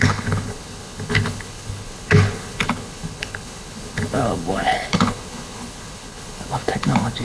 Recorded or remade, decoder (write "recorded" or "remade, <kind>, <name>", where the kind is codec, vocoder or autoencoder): remade, codec, HILCodec